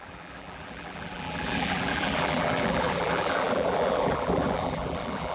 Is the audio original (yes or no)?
no